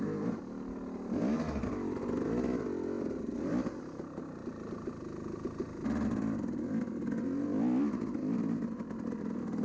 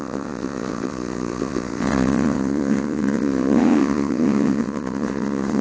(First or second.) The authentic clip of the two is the first